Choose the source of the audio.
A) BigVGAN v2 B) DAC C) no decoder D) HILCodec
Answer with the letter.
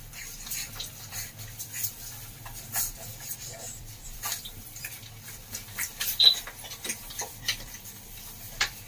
A